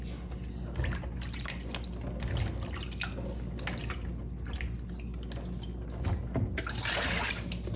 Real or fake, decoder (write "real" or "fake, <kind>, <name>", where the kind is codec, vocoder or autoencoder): real